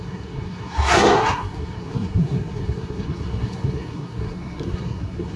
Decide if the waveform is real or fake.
fake